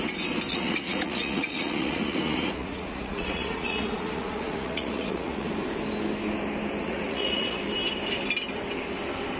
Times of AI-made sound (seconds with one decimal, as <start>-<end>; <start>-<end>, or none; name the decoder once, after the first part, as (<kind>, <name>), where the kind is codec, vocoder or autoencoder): 0.5-5.5 (vocoder, Vocos); 6.8-7.6